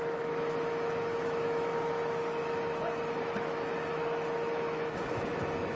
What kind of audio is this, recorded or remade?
remade